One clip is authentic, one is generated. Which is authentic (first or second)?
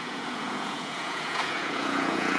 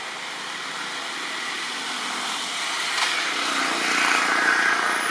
second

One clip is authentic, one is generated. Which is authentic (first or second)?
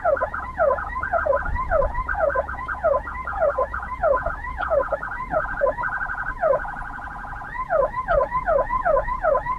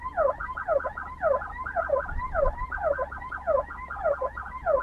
second